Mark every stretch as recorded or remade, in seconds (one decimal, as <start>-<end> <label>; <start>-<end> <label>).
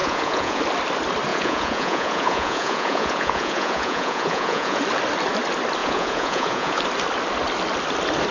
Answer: 0.0-0.6 remade; 0.6-1.3 recorded; 1.3-4.8 remade; 4.8-5.8 recorded; 5.8-6.8 remade; 6.8-8.3 recorded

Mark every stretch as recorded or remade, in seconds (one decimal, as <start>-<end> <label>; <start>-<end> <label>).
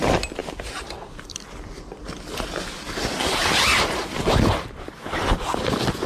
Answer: 0.0-6.1 recorded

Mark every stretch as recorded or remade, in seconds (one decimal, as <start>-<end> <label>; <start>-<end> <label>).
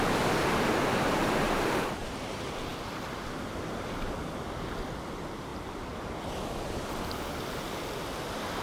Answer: 0.0-8.6 recorded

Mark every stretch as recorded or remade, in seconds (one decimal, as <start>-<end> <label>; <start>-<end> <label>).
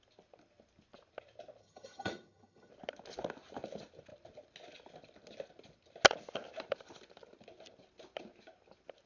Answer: 0.0-1.6 recorded; 1.6-2.7 remade; 2.7-9.1 recorded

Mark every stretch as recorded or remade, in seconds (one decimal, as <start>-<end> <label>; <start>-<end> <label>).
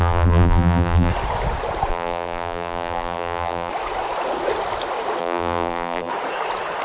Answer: 0.0-1.1 remade; 1.1-1.9 recorded; 1.9-3.7 remade; 3.7-5.2 recorded; 5.2-6.1 remade; 6.1-6.8 recorded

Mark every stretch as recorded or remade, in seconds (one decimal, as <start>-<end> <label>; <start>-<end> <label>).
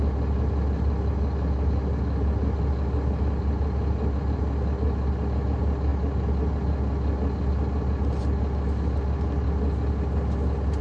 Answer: 0.0-10.8 recorded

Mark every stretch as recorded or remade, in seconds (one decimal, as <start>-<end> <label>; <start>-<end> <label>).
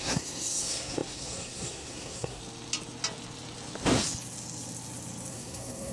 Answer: 0.0-2.4 remade; 2.4-5.3 recorded; 5.3-5.9 remade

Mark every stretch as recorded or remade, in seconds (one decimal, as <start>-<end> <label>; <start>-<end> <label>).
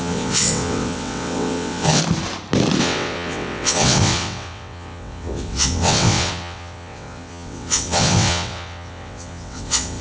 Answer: 0.0-2.0 remade; 2.0-2.8 recorded; 2.8-10.0 remade